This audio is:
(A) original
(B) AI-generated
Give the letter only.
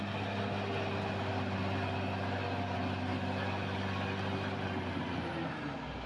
A